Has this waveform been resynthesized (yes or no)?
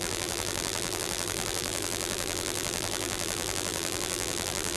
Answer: yes